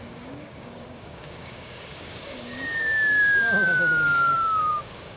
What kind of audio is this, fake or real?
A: fake